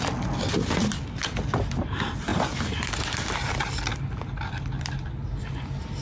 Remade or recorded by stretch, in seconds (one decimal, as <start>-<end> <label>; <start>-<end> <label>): 0.0-6.0 recorded